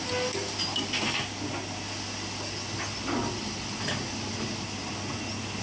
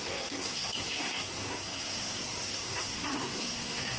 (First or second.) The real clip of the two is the first